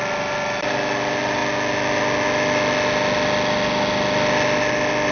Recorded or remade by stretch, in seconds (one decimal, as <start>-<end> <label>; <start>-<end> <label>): 0.0-5.1 recorded